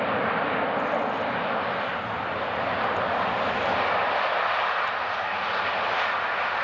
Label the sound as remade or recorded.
recorded